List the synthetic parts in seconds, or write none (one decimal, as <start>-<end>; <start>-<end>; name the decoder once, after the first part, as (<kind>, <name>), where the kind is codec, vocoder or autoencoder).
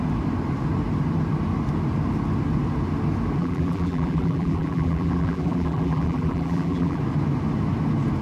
3.4-7.0 (vocoder, BigVGAN v2)